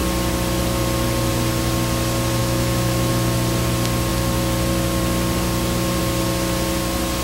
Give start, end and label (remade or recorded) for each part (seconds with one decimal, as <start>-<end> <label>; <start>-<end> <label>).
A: 0.0-2.4 recorded; 2.4-3.1 remade; 3.1-7.2 recorded